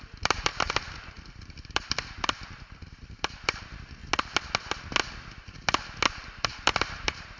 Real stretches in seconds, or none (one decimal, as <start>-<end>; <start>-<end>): 4.0-6.1